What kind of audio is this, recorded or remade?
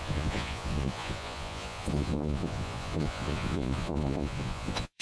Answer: remade